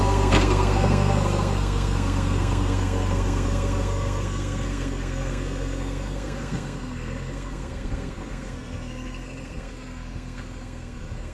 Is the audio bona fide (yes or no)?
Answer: no